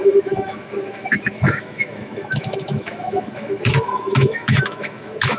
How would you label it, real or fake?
fake